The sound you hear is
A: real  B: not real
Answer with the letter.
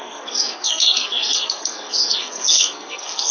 B